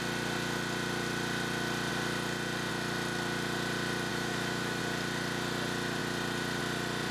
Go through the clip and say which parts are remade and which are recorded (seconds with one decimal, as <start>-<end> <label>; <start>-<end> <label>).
0.0-4.1 recorded; 4.1-4.8 remade; 4.8-7.1 recorded